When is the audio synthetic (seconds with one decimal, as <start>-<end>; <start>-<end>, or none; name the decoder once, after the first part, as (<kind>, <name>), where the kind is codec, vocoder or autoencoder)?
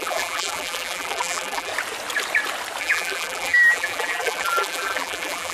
0.0-1.7 (vocoder, BigVGAN v2); 2.8-5.5